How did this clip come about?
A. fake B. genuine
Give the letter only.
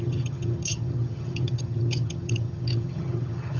A